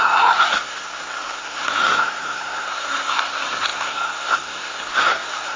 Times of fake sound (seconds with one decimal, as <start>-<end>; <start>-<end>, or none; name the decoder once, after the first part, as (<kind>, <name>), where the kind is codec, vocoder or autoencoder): 0.0-5.6 (codec, SNAC)